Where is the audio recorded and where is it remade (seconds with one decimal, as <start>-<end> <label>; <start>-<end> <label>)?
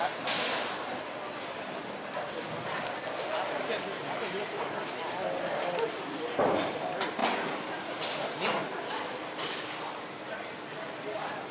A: 0.0-11.5 recorded